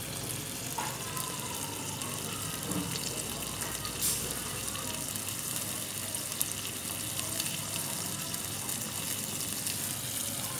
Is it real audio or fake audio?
real